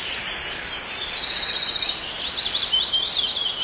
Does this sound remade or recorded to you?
recorded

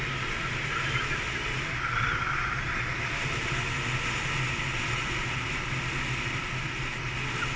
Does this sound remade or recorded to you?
recorded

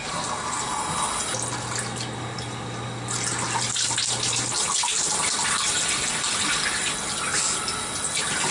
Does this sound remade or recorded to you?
recorded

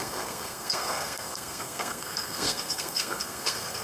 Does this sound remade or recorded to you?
remade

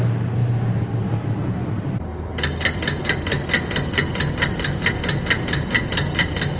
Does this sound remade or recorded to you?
recorded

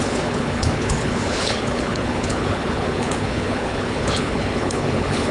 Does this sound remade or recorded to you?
remade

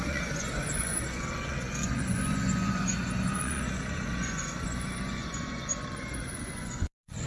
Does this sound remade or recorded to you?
remade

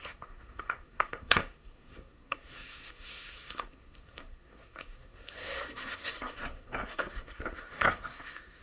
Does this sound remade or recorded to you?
remade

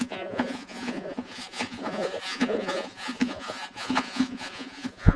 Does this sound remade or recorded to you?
remade